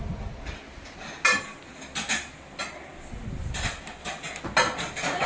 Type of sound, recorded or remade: recorded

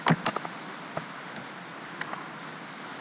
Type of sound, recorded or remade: recorded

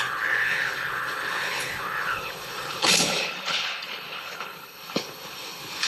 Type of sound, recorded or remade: remade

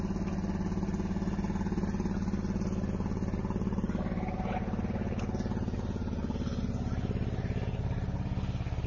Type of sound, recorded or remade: recorded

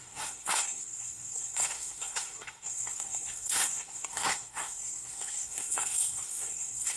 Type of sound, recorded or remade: remade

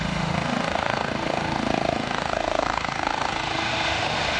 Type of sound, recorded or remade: remade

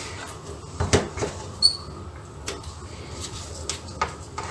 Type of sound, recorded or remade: recorded